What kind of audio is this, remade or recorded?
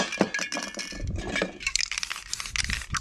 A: recorded